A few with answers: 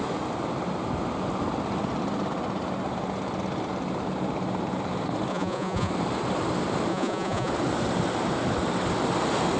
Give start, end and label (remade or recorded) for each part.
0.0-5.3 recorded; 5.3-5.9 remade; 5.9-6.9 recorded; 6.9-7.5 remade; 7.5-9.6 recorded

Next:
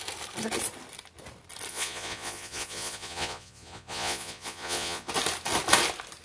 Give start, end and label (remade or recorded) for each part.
0.0-1.7 recorded; 1.7-5.1 remade; 5.1-6.2 recorded

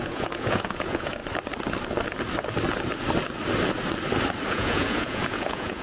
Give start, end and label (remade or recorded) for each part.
0.0-1.2 remade; 1.2-4.5 recorded; 4.5-5.8 remade

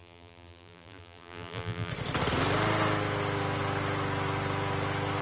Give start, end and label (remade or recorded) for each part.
0.0-1.9 remade; 1.9-5.2 recorded

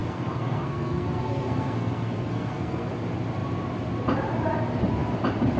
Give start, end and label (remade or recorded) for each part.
0.0-2.9 remade; 2.9-5.6 recorded

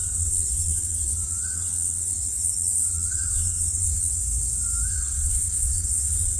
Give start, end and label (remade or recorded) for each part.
0.0-4.2 remade; 4.2-4.9 recorded; 4.9-6.4 remade

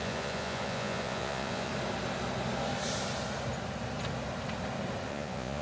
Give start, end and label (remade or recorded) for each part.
0.0-1.7 remade; 1.7-5.1 recorded; 5.1-5.6 remade

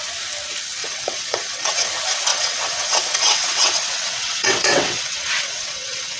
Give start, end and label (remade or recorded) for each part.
0.0-0.8 recorded; 0.8-1.9 remade; 1.9-2.3 recorded; 2.3-6.2 remade